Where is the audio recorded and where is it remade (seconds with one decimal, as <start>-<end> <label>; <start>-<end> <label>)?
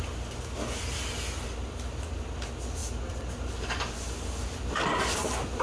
0.0-5.6 recorded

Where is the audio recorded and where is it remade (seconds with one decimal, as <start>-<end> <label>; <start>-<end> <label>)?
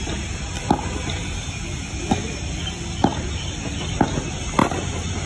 0.0-4.6 recorded; 4.6-5.3 remade